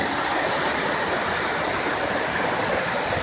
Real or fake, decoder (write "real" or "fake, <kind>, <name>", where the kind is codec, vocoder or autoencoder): real